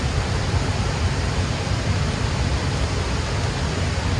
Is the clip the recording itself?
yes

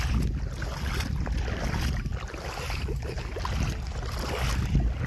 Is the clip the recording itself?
yes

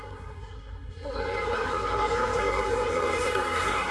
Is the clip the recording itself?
no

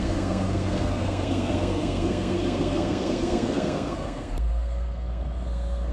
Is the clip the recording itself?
no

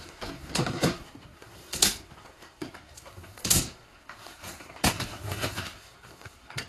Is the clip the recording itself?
no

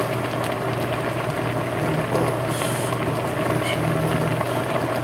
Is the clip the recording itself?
yes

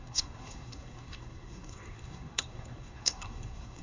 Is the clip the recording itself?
no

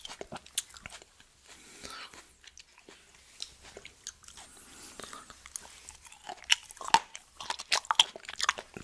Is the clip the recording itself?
yes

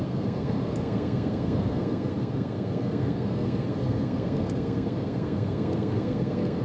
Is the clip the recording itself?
no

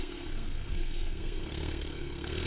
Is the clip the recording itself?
no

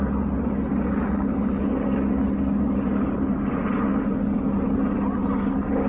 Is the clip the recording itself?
yes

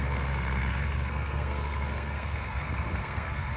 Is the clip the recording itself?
no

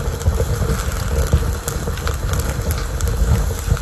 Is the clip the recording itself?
yes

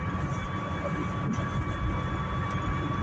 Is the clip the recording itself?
yes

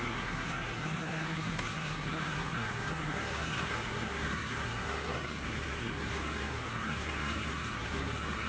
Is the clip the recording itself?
no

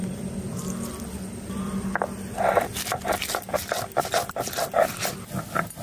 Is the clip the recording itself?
yes